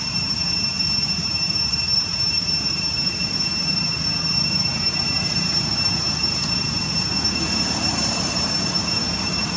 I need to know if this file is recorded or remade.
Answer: remade